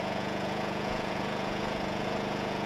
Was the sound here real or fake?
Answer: fake